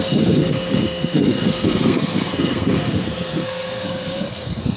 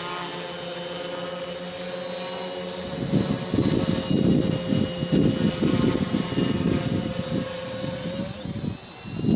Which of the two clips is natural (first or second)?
second